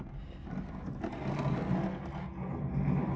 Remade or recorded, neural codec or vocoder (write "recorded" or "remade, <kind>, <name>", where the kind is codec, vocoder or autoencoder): recorded